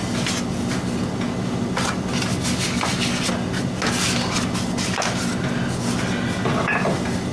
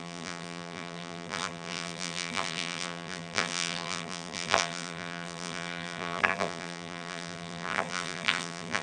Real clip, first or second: first